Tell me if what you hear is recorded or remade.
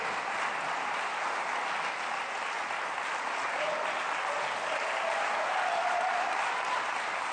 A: recorded